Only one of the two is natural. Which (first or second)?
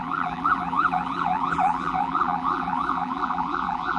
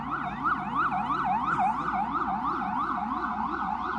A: second